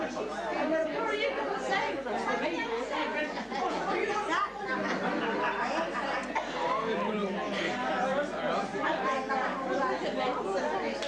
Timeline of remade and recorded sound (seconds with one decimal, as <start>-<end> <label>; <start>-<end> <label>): 0.0-0.8 recorded; 0.8-1.9 remade; 1.9-2.6 recorded; 2.6-4.7 remade; 4.7-11.1 recorded